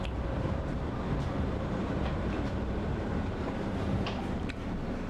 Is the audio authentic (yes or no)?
no